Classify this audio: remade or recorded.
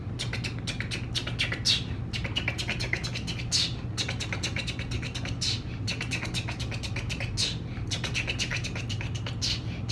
recorded